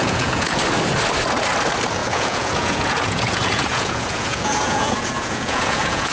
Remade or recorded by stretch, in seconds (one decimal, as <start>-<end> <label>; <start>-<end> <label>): 0.0-0.6 remade; 0.6-2.0 recorded; 2.0-6.1 remade